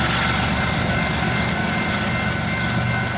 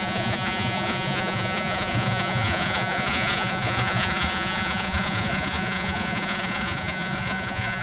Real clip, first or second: first